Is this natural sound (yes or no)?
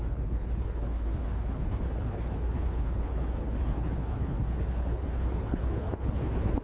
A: no